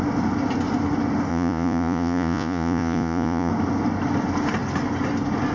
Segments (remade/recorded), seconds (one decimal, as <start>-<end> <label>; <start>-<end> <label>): 0.0-1.3 recorded; 1.3-3.5 remade; 3.5-5.5 recorded